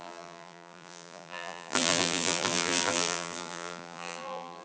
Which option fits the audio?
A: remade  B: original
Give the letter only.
A